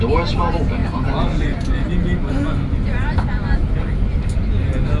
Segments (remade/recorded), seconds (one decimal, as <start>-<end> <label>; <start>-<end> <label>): 0.0-5.0 recorded